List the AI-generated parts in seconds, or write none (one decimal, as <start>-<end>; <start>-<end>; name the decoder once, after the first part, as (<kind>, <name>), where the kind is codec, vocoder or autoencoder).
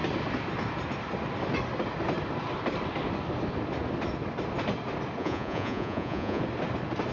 5.2-6.4 (vocoder, Vocos)